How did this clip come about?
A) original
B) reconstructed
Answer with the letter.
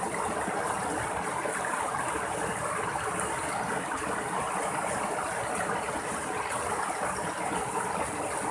A